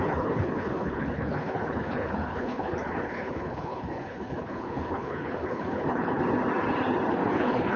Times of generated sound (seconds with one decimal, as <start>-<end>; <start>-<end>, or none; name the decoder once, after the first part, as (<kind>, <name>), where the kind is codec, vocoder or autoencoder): 0.0-6.2 (codec, HILCodec); 7.1-7.8